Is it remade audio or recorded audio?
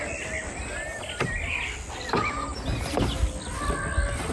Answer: recorded